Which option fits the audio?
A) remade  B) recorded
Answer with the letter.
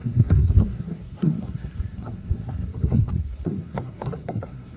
A